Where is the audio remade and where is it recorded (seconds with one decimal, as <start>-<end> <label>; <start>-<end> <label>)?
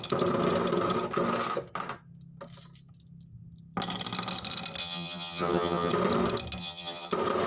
0.0-4.8 recorded; 4.8-5.9 remade; 5.9-6.6 recorded; 6.6-7.1 remade; 7.1-7.5 recorded